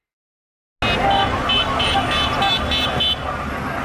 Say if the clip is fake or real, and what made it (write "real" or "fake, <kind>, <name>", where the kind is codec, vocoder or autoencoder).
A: real